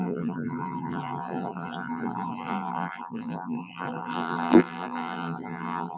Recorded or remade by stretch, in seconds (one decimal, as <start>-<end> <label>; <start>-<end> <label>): 0.0-6.0 remade